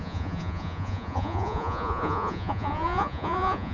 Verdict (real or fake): fake